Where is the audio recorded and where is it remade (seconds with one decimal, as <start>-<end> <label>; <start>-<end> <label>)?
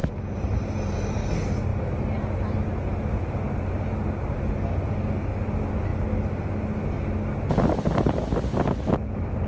0.0-9.5 recorded